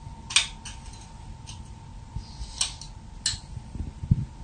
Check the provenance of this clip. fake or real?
real